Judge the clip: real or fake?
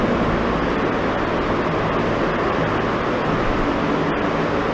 real